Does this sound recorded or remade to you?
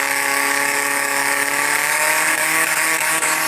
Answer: remade